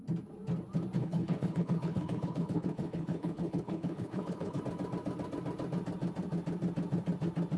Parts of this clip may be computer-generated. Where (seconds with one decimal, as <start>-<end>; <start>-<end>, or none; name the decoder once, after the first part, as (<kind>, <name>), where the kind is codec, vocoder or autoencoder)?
1.0-4.6 (codec, HILCodec)